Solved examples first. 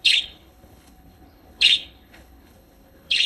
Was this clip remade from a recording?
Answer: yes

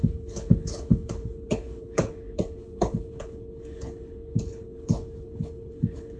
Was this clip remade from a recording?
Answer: yes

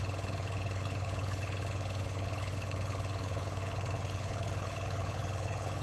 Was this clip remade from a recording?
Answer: yes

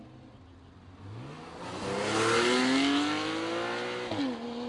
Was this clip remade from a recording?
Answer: no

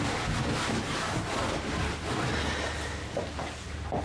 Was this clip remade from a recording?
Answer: no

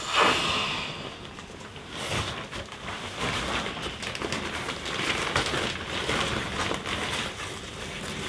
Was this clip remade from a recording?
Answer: no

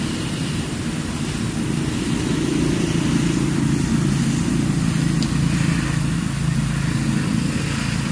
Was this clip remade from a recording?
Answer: no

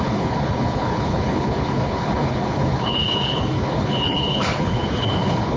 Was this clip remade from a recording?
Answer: yes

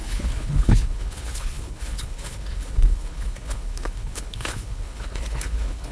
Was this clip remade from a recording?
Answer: yes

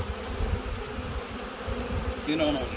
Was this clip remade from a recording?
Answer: no